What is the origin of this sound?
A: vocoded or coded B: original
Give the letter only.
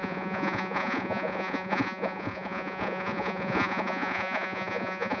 A